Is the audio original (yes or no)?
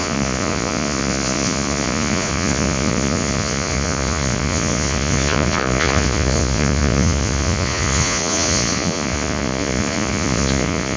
no